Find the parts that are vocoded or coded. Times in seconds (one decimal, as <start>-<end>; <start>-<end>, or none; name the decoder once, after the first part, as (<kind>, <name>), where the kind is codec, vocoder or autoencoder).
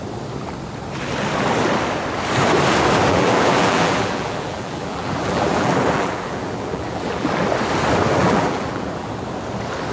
3.1-7.3 (vocoder, BigVGAN v2); 8.2-9.1